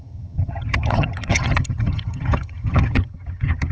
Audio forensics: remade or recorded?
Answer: remade